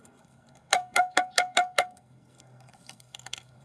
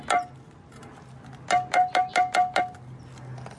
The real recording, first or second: second